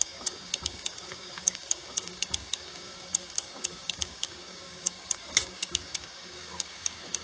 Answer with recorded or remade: remade